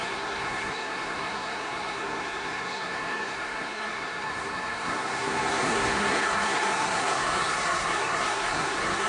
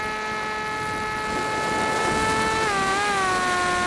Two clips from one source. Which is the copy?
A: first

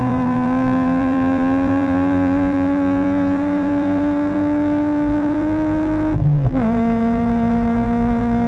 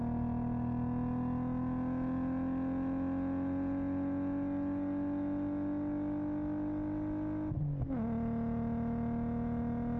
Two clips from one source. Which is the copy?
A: first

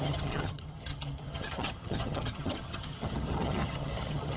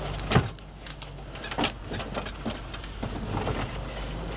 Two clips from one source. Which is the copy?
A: first